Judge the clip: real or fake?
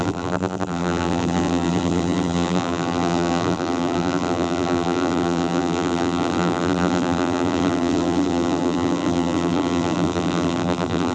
fake